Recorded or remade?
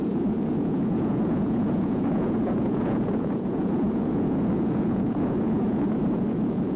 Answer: remade